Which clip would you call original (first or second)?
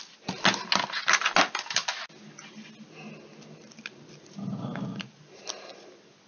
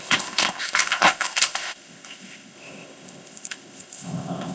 first